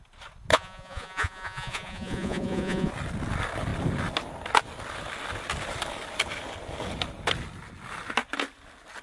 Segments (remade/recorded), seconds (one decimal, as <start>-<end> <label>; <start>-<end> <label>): 0.0-0.5 recorded; 0.5-2.9 remade; 2.9-9.0 recorded